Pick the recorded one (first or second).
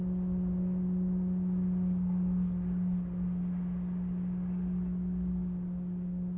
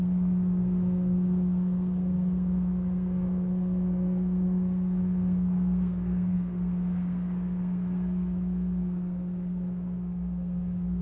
first